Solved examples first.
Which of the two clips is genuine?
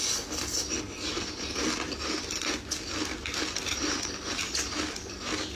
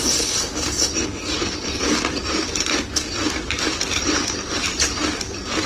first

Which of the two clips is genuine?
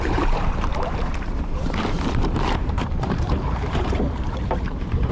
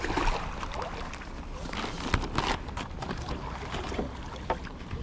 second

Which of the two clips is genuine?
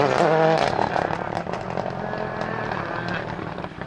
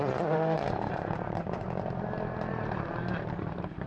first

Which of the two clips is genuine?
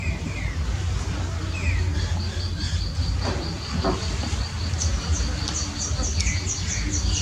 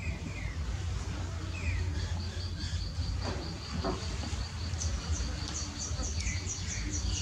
first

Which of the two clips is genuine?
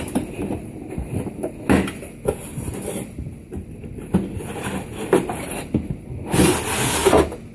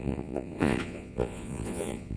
first